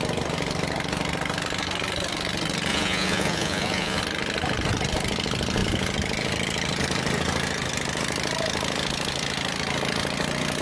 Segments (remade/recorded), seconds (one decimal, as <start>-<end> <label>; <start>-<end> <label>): 0.0-2.7 recorded; 2.7-4.0 remade; 4.0-10.6 recorded